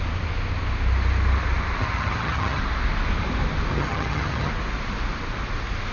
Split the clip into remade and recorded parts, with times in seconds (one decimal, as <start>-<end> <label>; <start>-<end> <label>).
0.0-1.8 recorded; 1.8-2.6 remade; 2.6-3.7 recorded; 3.7-4.5 remade; 4.5-5.9 recorded

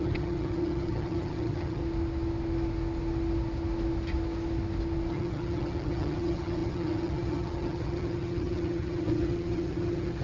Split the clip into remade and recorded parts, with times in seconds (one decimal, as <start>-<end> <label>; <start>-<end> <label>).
0.0-1.8 remade; 1.8-5.1 recorded; 5.1-10.2 remade

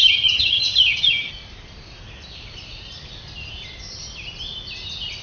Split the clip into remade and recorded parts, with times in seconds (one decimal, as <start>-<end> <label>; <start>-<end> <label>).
0.0-1.3 remade; 1.3-5.2 recorded

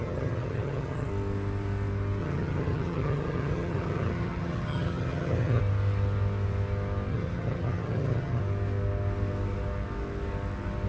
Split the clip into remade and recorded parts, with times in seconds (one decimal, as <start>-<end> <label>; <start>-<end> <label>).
0.0-1.1 remade; 1.1-2.2 recorded; 2.2-5.6 remade; 5.6-7.1 recorded; 7.1-8.4 remade; 8.4-10.9 recorded

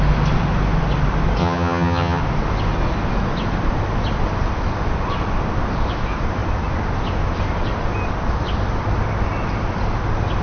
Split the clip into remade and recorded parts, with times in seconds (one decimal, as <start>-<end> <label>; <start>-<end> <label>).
0.0-1.4 recorded; 1.4-2.2 remade; 2.2-10.4 recorded